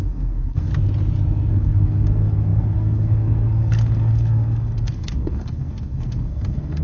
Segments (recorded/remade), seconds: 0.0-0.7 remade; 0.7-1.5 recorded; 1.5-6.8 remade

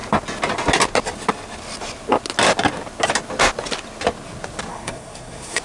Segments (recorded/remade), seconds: 0.0-4.7 recorded; 4.7-5.6 remade

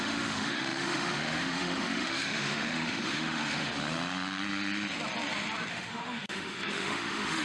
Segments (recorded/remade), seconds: 0.0-3.7 remade; 3.7-5.7 recorded; 5.7-7.4 remade

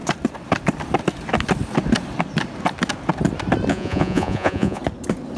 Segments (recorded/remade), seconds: 0.0-3.7 recorded; 3.7-4.8 remade; 4.8-5.4 recorded

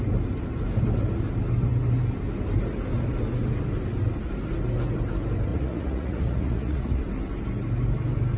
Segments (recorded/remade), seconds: 0.0-5.5 recorded; 5.5-7.0 remade; 7.0-8.4 recorded